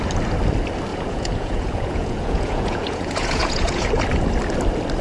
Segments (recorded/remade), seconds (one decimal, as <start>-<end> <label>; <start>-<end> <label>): 0.0-0.9 recorded; 0.9-3.9 remade; 3.9-5.0 recorded